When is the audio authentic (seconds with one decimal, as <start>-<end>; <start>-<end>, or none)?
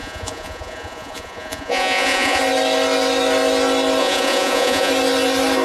2.4-4.0; 4.9-5.6